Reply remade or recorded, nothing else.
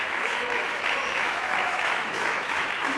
remade